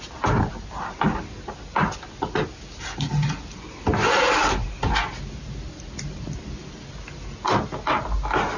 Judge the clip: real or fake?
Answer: real